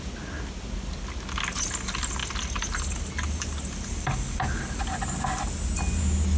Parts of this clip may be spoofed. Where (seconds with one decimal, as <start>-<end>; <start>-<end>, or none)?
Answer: none